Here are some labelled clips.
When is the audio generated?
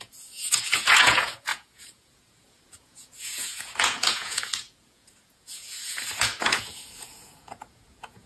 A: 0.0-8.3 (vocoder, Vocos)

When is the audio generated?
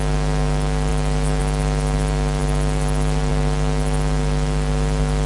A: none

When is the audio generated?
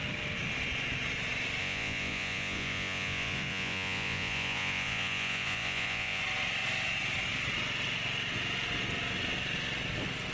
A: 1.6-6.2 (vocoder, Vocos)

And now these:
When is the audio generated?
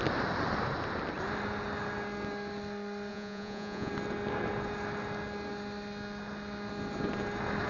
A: 3.1-3.9 (vocoder, Vocos)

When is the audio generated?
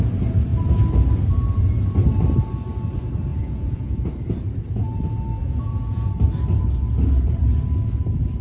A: 3.3-4.1 (vocoder, Vocos); 5.4-6.1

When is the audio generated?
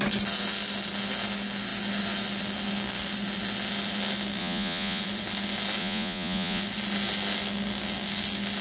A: 4.4-5.0 (vocoder, Vocos); 5.8-6.6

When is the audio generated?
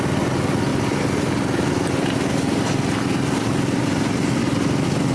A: none